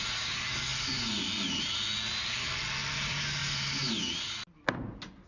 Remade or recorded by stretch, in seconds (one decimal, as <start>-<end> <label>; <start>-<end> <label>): 0.0-3.4 recorded; 3.4-4.4 remade; 4.4-5.3 recorded